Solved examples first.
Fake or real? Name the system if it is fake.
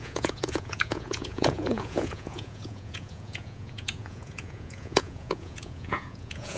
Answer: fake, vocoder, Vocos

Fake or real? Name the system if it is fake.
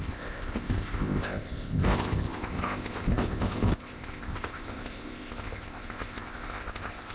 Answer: fake, codec, ZipCodec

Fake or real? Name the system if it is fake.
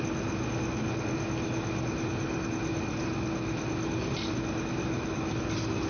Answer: real